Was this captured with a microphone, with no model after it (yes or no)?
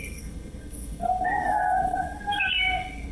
no